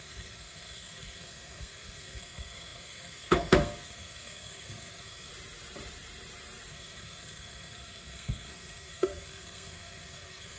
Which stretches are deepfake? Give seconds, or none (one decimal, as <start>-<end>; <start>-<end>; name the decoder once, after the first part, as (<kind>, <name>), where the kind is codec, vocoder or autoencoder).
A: 0.0-5.3 (codec, SNAC); 6.7-10.6